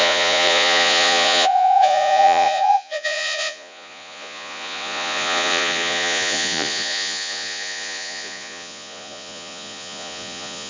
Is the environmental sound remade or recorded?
remade